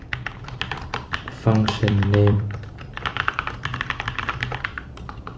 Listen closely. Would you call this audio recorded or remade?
remade